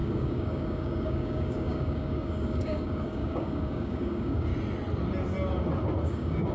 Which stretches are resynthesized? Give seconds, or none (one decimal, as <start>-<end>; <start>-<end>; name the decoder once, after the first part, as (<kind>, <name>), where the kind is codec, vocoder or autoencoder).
0.0-4.5 (codec, DAC); 6.0-6.5